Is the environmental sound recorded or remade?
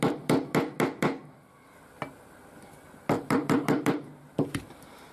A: recorded